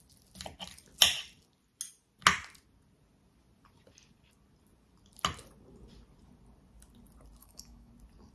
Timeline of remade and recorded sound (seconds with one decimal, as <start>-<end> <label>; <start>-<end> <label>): 0.0-7.4 recorded; 7.4-7.9 remade; 7.9-8.3 recorded